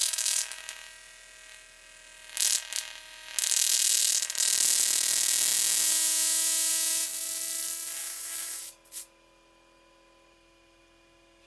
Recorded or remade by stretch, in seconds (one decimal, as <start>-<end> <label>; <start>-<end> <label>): 0.0-0.6 remade; 0.6-8.0 recorded; 8.0-8.6 remade; 8.6-11.5 recorded